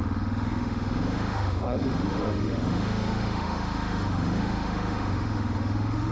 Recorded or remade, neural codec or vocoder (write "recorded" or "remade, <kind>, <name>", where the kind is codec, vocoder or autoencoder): remade, autoencoder, DAC-VAE